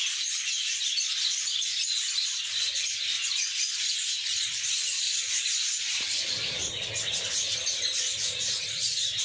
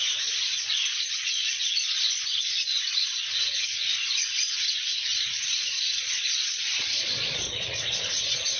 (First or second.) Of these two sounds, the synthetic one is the second